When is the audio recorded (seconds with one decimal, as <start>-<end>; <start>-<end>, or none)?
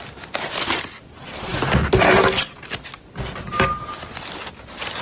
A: 0.0-5.0